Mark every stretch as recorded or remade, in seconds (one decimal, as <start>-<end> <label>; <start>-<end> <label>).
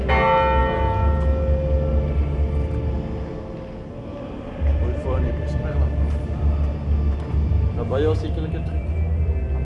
0.0-4.7 recorded; 4.7-5.3 remade; 5.3-9.6 recorded